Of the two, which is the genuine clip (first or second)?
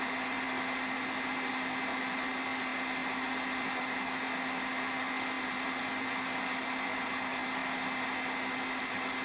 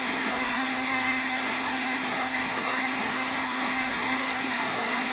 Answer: first